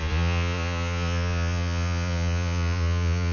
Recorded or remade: remade